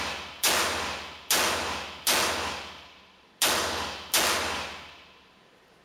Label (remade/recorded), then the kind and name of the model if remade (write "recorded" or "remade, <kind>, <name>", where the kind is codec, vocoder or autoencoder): recorded